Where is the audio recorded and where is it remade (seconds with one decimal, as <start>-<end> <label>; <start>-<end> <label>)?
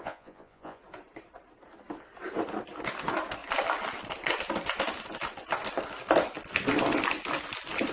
0.0-0.8 remade; 0.8-7.9 recorded